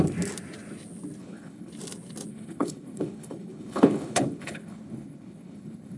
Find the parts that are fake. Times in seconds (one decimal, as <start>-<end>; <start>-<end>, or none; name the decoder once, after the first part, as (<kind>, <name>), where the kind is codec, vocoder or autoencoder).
1.2-1.7 (codec, HILCodec); 2.3-6.0